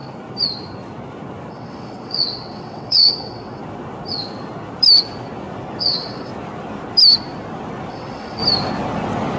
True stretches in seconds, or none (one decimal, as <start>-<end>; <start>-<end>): 0.0-1.5; 3.6-5.8; 6.3-7.9; 8.4-9.4